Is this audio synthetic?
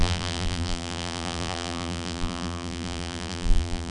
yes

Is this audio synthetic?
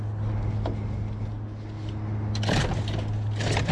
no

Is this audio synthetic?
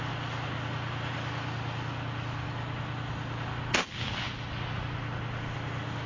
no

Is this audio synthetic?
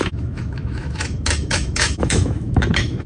yes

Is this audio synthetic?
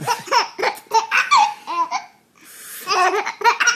no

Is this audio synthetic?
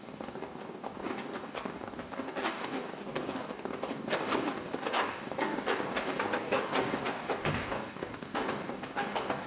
yes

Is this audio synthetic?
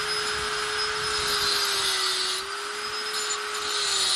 no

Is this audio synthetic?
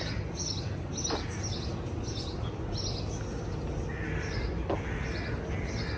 no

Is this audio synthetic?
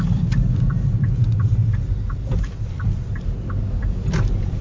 yes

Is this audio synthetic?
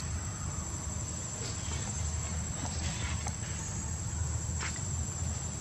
no